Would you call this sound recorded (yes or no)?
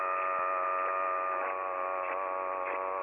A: yes